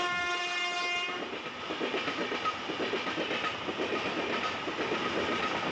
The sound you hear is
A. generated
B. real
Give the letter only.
B